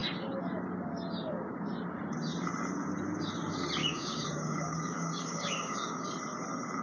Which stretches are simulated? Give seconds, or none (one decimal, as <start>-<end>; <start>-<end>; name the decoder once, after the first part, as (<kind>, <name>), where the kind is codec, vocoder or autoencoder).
3.8-6.1 (codec, DAC)